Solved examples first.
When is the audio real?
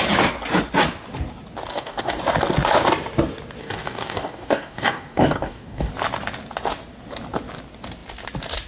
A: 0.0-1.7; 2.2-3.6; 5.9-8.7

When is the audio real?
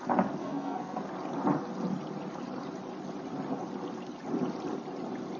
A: 0.0-0.4; 1.0-5.4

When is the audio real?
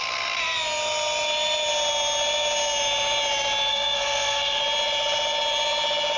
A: 0.0-3.7; 4.6-6.2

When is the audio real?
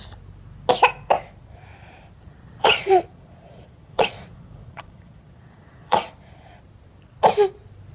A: 0.0-2.6; 6.1-7.9